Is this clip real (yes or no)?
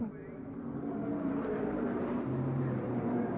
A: no